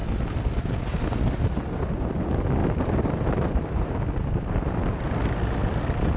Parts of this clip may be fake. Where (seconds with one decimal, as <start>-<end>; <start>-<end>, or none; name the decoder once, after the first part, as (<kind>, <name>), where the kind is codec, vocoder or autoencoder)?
2.6-3.9 (vocoder, BigVGAN v2)